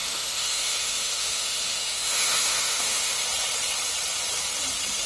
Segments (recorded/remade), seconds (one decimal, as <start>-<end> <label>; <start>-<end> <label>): 0.0-3.2 remade; 3.2-5.1 recorded